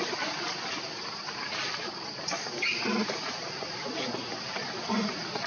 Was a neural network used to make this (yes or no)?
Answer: yes